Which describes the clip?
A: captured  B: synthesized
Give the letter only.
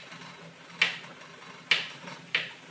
A